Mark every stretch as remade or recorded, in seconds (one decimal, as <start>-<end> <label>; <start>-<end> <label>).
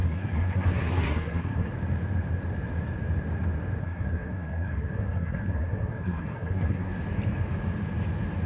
0.0-1.7 remade; 1.7-3.8 recorded; 3.8-7.0 remade; 7.0-8.5 recorded